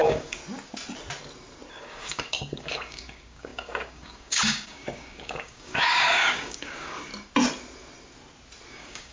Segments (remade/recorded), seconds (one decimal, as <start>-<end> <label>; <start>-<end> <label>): 0.0-0.4 remade; 0.4-1.7 recorded; 1.7-7.1 remade; 7.1-8.7 recorded; 8.7-9.1 remade